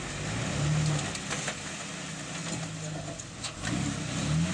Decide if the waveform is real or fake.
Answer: real